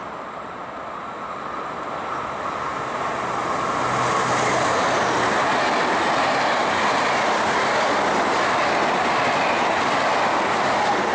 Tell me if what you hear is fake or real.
real